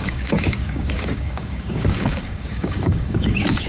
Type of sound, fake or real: fake